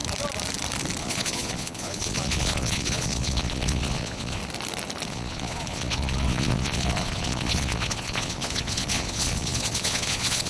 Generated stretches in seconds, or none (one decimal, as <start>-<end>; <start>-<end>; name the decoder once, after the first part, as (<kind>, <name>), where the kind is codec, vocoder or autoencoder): 1.0-4.4 (vocoder, Vocos); 5.1-10.5